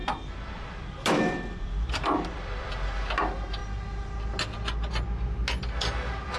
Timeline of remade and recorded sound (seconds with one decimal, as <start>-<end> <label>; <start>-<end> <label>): 0.0-2.7 remade; 2.7-6.4 recorded